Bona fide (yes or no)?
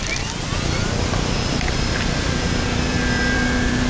no